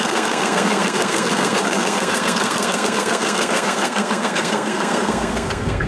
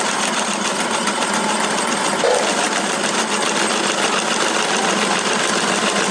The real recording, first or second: second